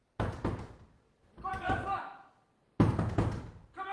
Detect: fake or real real